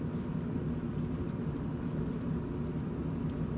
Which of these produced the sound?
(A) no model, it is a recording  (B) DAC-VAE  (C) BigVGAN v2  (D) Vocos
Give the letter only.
A